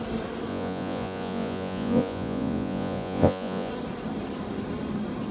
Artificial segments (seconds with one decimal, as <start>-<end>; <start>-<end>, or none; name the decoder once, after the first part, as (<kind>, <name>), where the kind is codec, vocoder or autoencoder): 0.5-3.7 (vocoder, Vocos)